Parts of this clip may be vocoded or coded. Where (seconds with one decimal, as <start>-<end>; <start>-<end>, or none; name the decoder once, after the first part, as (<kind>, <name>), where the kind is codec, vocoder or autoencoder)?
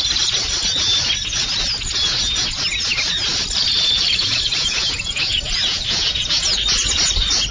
4.2-6.3 (vocoder, Vocos)